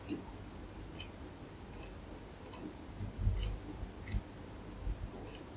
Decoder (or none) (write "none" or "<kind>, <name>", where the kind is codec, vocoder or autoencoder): none